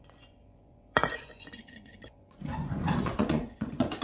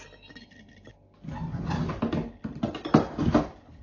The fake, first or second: first